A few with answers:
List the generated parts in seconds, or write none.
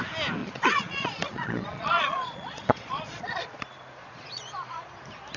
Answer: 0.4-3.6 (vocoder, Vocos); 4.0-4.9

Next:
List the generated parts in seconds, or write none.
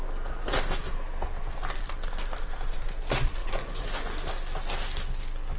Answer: 3.4-4.1 (vocoder, Vocos)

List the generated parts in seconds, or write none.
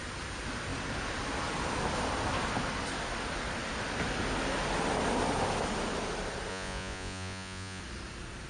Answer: 6.5-7.8 (vocoder, Vocos)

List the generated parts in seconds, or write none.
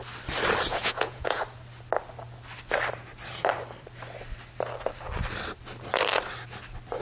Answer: 0.7-1.4 (vocoder, Vocos)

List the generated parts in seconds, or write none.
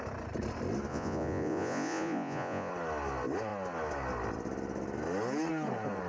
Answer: 0.9-2.7 (vocoder, Vocos)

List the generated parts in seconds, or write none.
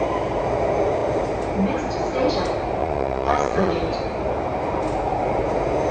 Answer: 2.8-3.7 (vocoder, Vocos)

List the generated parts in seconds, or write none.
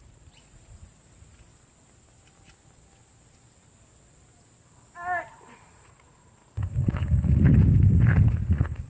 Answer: 0.0-1.5 (vocoder, Vocos); 5.3-7.6; 8.4-8.9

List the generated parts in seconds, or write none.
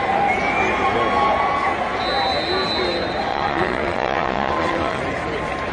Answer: 3.3-5.0 (vocoder, Vocos)